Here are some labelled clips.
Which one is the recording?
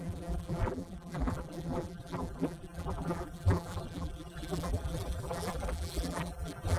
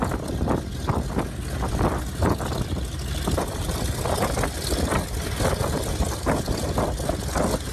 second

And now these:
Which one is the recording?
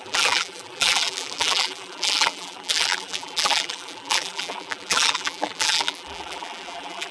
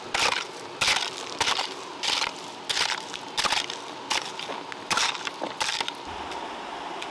second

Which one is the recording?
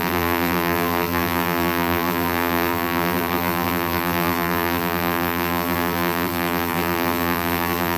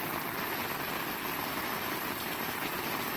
second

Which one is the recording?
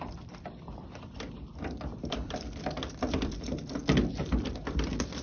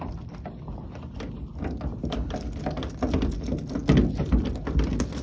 second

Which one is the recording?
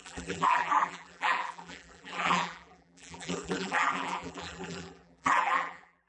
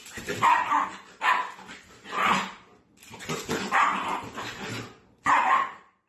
second